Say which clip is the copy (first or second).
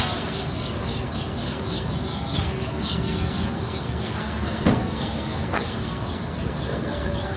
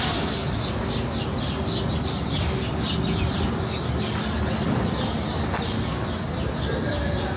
first